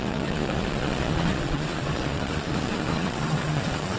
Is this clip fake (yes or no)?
yes